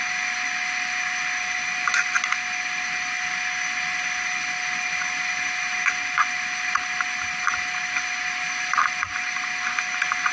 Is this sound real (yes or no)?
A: yes